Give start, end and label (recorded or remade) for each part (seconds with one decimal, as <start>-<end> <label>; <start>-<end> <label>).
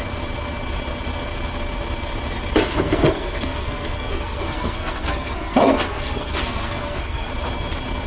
0.0-2.6 recorded; 2.6-7.3 remade; 7.3-8.1 recorded